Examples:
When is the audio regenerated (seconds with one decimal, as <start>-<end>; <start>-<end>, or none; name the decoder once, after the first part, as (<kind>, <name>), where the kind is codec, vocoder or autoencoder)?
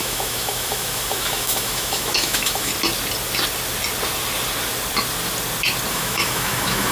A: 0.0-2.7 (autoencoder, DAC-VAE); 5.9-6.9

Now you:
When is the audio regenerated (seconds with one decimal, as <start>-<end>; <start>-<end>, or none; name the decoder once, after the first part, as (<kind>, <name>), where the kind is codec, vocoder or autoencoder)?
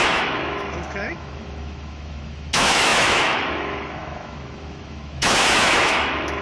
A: 0.0-6.4 (autoencoder, DAC-VAE)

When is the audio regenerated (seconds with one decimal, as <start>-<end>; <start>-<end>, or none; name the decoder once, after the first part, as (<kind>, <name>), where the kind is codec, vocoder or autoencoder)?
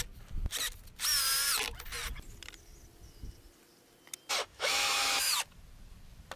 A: 4.4-5.3 (autoencoder, DAC-VAE)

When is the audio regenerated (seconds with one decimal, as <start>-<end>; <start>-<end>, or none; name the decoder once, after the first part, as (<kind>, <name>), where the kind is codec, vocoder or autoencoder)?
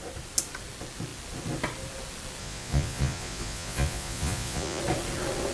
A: 2.4-4.8 (vocoder, Vocos)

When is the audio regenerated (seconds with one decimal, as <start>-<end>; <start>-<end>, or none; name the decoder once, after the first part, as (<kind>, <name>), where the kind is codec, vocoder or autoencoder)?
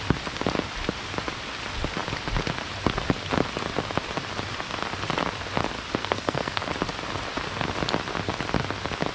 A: 6.0-6.7 (codec, SNAC)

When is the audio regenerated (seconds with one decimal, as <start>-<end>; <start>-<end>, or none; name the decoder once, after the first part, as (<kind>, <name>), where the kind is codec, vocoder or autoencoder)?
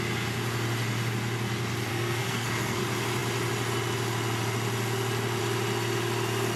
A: 1.9-2.8 (codec, SNAC)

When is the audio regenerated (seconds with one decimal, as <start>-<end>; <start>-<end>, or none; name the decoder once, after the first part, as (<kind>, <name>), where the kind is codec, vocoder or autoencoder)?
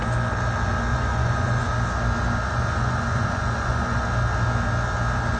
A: 0.9-1.7 (vocoder, Vocos); 2.5-4.0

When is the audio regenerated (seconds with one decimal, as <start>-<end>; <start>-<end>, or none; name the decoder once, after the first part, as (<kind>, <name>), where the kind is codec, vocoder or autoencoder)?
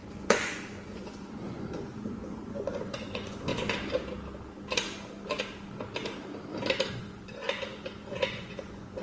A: 0.0-3.5 (vocoder, Vocos); 6.9-9.0